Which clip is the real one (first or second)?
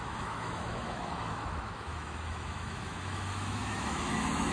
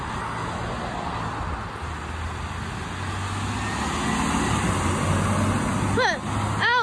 second